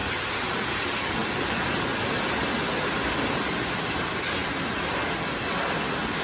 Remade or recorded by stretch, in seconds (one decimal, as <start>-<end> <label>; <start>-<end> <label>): 0.0-0.7 remade; 0.7-6.2 recorded